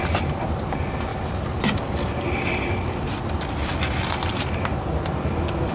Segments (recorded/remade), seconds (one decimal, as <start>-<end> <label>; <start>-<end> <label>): 0.0-5.7 recorded

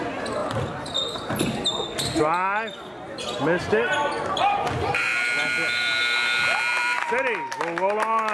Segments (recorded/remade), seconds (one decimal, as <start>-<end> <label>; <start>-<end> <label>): 0.0-8.3 recorded